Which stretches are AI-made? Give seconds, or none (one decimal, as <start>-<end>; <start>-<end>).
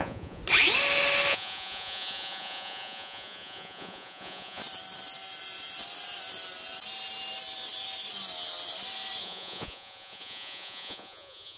0.0-0.4; 1.3-4.6; 9.2-11.6